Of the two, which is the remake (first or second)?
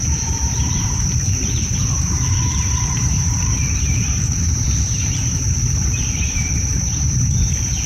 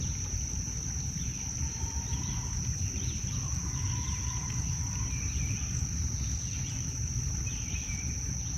first